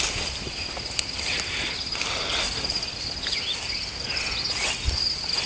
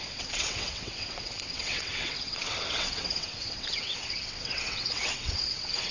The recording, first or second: first